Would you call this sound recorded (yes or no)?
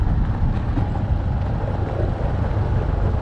yes